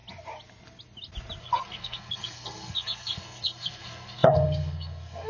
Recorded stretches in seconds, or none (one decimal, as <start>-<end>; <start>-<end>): 0.0-1.4